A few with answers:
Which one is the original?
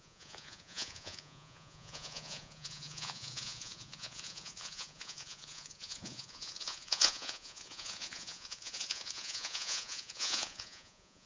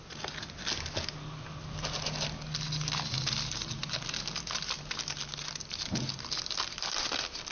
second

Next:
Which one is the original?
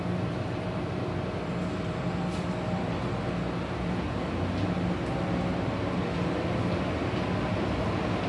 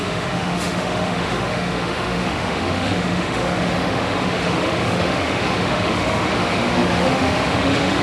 first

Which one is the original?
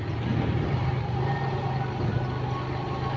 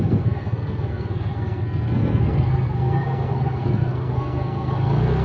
first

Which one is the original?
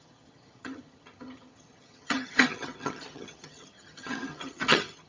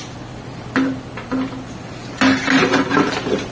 second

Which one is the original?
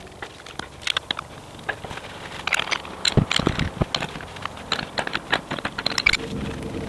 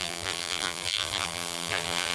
first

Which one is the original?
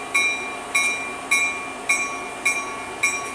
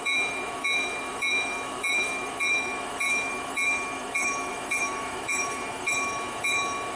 first